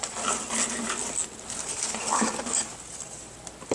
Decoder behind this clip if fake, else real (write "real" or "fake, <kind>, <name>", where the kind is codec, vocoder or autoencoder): real